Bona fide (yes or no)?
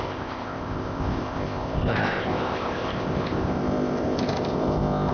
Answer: no